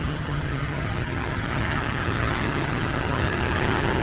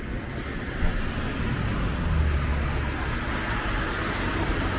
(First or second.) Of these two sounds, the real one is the second